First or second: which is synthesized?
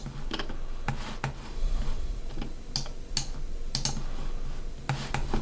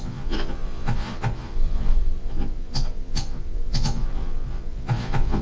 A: second